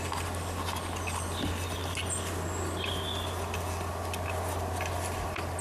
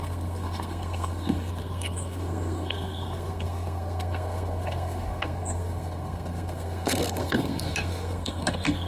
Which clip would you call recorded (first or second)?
first